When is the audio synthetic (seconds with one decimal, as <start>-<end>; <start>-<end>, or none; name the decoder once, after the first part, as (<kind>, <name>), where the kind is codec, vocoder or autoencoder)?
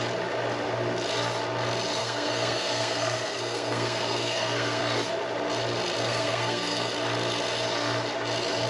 2.0-4.8 (codec, SNAC); 6.0-6.9